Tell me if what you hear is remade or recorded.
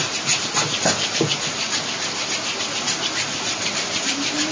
recorded